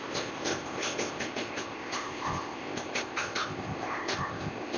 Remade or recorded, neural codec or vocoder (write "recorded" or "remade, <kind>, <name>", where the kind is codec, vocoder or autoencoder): remade, codec, ZipCodec